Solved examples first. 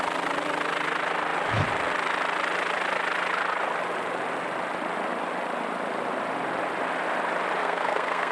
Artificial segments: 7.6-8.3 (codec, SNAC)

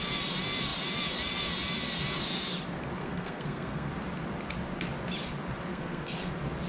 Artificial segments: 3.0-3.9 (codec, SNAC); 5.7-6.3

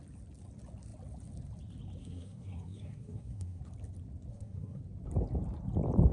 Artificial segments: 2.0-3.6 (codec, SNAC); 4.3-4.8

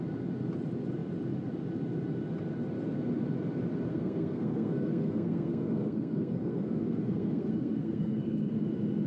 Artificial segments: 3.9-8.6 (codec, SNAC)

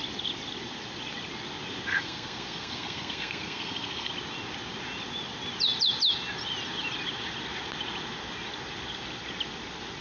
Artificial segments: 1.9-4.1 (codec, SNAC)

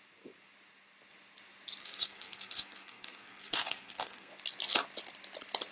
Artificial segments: 1.8-4.3 (codec, SNAC)

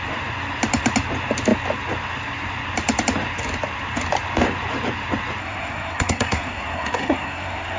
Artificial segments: 5.4-7.8 (codec, SNAC)

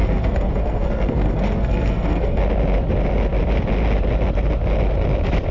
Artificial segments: 0.0-2.4 (codec, SNAC)